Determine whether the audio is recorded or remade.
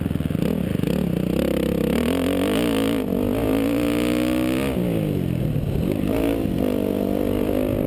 recorded